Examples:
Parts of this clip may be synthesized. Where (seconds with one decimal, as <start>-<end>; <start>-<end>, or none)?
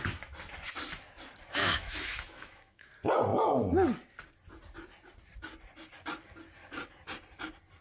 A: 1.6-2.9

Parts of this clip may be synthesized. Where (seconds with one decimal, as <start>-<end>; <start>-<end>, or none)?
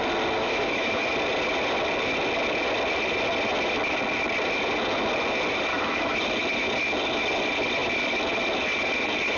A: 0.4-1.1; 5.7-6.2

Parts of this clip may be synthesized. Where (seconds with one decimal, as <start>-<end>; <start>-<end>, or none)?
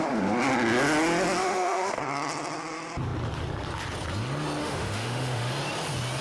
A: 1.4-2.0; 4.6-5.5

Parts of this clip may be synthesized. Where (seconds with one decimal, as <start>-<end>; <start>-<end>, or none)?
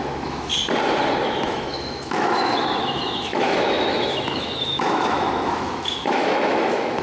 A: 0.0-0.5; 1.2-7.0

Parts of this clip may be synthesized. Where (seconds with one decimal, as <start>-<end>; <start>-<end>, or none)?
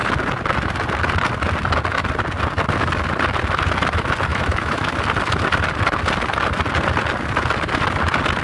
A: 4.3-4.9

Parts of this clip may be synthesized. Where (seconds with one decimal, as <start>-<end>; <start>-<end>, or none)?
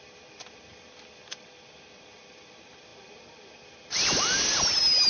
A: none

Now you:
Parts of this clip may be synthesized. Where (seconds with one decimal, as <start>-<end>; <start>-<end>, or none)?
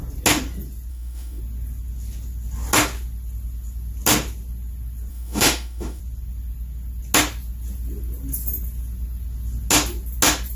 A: 0.9-1.4; 5.1-6.0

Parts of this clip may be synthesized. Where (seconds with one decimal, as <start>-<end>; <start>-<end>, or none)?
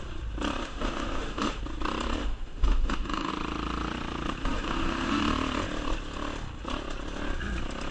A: 0.6-1.6; 2.2-3.3; 4.4-5.2